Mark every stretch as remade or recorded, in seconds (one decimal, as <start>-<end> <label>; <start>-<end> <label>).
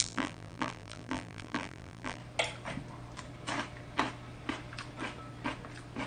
0.0-2.2 remade; 2.2-6.1 recorded